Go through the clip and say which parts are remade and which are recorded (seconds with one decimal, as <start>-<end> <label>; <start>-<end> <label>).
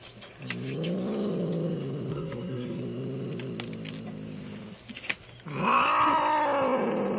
0.0-2.1 recorded; 2.1-2.8 remade; 2.8-7.2 recorded